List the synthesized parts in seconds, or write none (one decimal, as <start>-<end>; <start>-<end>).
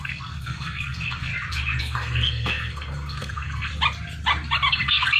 0.0-1.3; 1.8-3.7; 4.7-5.2